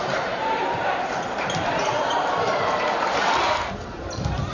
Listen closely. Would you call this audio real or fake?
fake